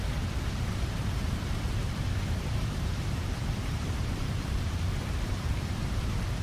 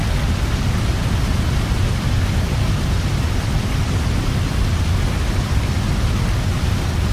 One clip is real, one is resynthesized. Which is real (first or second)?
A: second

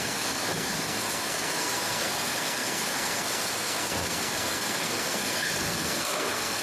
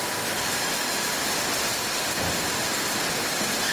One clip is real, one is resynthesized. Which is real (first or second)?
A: second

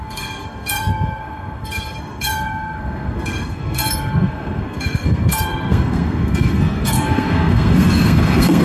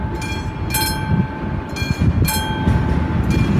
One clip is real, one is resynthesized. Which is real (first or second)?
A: second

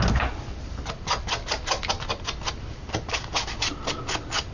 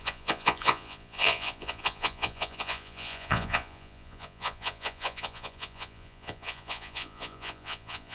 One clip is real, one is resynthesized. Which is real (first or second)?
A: first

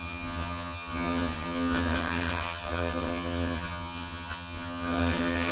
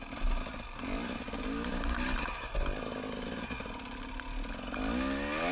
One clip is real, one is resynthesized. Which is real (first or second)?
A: second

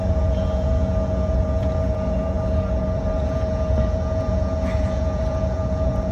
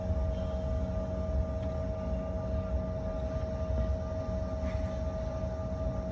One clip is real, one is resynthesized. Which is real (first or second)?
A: second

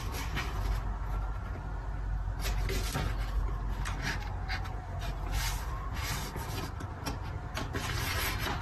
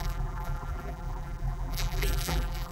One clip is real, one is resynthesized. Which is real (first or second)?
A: first